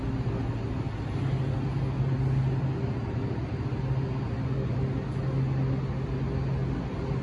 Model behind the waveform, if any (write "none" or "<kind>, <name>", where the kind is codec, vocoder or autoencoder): none